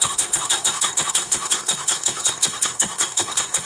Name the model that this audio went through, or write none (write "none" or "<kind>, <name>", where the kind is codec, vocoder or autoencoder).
codec, SNAC